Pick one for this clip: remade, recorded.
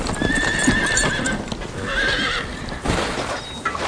recorded